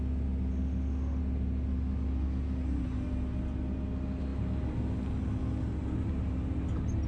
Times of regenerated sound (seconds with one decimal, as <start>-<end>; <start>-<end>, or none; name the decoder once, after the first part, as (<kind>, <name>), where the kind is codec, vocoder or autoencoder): 0.5-1.2 (autoencoder, DAC-VAE)